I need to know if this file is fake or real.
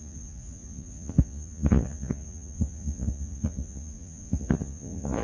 fake